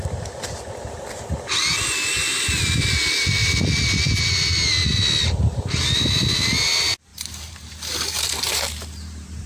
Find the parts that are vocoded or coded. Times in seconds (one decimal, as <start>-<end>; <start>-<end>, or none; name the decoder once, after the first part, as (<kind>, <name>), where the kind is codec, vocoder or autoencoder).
7.1-9.5 (vocoder, BigVGAN v2)